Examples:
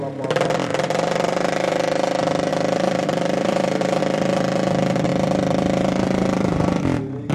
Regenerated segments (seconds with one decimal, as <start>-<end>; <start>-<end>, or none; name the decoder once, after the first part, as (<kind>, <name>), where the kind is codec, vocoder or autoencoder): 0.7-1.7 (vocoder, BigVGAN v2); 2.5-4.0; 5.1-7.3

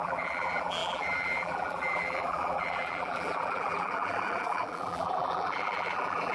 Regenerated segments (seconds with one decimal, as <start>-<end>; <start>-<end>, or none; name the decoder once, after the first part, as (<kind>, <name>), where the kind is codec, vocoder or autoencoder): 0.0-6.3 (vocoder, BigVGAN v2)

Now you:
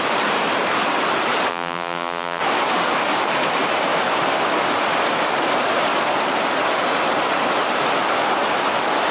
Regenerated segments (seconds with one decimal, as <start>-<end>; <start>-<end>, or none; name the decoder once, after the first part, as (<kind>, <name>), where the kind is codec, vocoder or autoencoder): 1.5-2.4 (vocoder, BigVGAN v2)

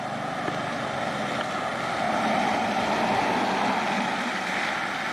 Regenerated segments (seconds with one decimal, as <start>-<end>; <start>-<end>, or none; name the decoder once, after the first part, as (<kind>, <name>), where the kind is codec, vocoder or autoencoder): none